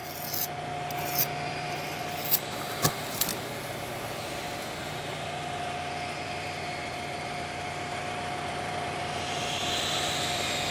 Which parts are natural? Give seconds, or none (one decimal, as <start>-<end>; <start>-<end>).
0.0-1.2; 3.3-4.8